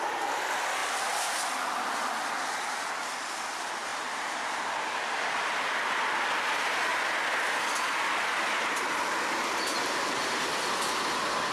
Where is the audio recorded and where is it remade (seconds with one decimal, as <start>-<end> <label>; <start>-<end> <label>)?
0.0-3.9 recorded; 3.9-4.5 remade; 4.5-11.5 recorded